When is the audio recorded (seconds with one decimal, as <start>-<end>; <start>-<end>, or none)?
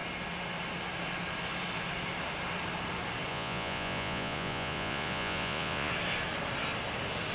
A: 0.0-3.3; 5.9-7.3